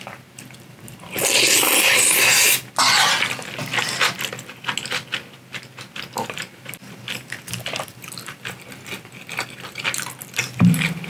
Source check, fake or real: real